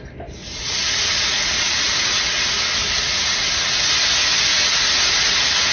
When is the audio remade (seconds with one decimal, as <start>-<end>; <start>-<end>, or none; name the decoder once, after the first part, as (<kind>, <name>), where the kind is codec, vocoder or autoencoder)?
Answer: 0.4-3.8 (vocoder, Vocos); 4.5-5.7

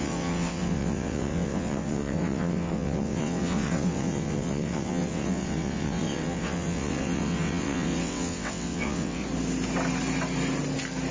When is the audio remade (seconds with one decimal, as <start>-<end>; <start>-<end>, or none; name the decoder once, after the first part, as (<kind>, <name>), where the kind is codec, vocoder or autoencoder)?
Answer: 0.0-9.2 (vocoder, WaveNeXt)